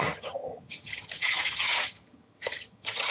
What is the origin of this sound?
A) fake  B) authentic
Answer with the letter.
A